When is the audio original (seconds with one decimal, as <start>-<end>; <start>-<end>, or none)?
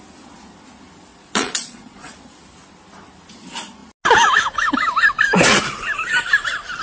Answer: 0.0-1.1; 2.1-6.8